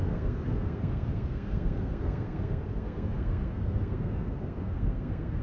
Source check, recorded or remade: remade